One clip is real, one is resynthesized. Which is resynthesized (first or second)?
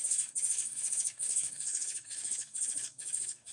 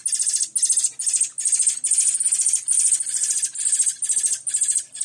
first